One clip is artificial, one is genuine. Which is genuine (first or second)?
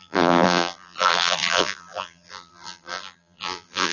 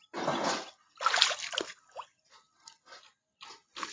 second